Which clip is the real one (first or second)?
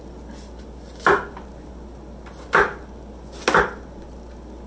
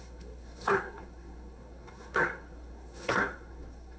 first